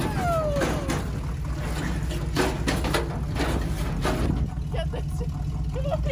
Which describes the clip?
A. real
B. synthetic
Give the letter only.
A